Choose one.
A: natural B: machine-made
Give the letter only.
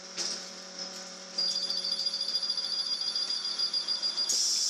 B